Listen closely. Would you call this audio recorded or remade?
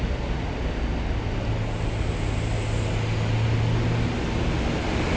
recorded